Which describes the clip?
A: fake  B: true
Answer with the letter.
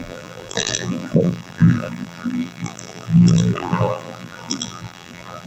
A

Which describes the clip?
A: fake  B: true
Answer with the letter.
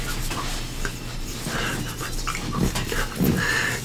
B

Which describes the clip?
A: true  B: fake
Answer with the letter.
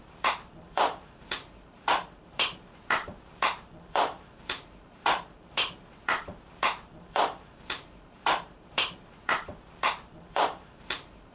B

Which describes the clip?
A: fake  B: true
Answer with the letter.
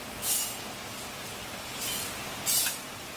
B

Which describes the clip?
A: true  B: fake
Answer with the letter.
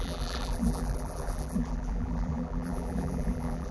B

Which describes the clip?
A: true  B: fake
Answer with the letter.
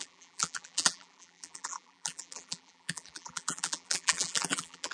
B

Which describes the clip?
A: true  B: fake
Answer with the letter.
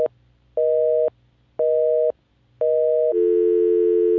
A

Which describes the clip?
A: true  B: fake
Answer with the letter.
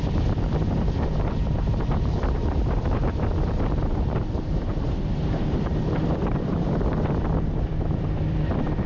B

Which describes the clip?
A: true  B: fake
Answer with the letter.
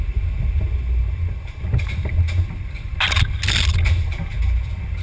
A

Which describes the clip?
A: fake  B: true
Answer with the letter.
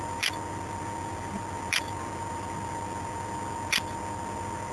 B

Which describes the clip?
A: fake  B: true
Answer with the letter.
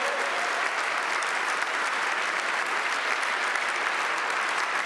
A